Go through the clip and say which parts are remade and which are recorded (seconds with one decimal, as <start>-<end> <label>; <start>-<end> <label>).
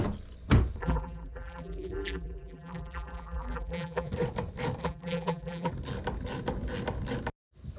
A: 0.0-0.8 recorded; 0.8-4.1 remade; 4.1-4.8 recorded; 4.8-5.7 remade; 5.7-7.8 recorded